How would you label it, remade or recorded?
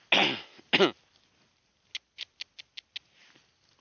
recorded